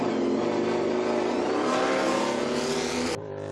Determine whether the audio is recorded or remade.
recorded